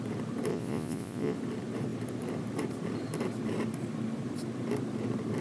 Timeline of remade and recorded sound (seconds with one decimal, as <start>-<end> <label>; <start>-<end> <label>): 0.0-0.5 recorded; 0.5-1.4 remade; 1.4-5.4 recorded